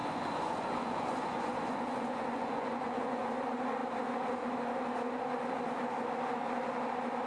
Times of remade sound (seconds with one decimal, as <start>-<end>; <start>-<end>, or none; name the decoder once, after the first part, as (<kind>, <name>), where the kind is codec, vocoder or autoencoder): 0.0-3.3 (vocoder, Vocos)